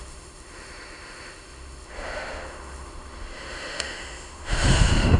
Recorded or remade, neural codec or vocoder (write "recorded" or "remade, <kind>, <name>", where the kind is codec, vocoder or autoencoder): remade, autoencoder, DAC-VAE